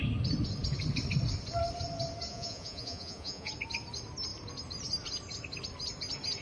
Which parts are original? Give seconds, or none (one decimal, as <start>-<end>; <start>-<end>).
0.0-2.3; 3.5-6.4